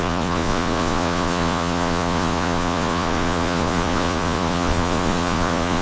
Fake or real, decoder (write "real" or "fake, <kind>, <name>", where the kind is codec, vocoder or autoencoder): fake, vocoder, Vocos